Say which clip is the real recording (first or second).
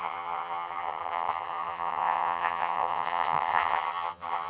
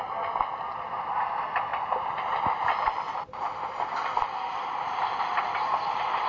second